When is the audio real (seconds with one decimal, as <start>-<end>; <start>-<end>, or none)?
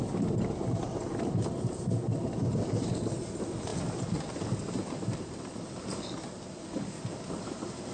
0.0-7.9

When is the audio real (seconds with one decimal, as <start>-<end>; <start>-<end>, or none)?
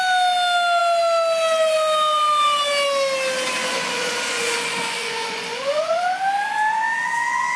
0.0-3.6; 6.0-7.6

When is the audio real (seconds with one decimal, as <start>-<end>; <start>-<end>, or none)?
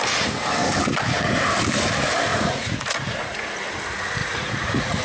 0.0-2.3; 3.5-4.2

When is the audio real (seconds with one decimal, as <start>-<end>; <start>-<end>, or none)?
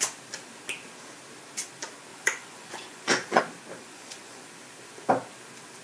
0.0-2.1; 3.4-3.8; 4.5-5.8